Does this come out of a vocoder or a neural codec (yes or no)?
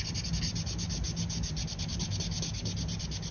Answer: no